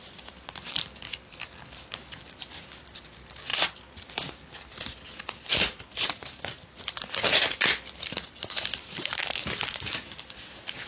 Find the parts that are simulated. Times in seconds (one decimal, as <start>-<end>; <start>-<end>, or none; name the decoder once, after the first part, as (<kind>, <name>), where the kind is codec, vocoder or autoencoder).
none